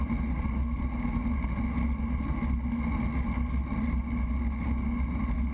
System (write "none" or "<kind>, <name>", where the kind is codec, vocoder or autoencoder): none